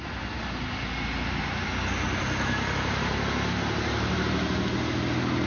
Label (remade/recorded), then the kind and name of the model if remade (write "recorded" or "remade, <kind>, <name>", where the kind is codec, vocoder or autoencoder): recorded